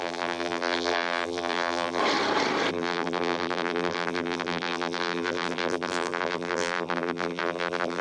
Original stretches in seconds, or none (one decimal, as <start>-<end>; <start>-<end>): 2.0-2.7